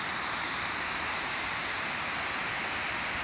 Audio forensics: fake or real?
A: fake